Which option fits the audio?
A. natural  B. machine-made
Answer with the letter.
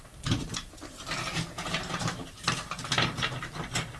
B